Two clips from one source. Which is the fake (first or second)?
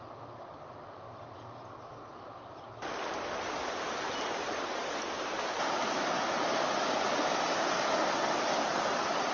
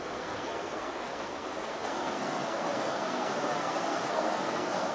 second